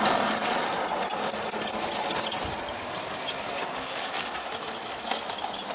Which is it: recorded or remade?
recorded